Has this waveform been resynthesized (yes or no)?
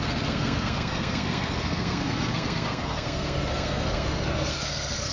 yes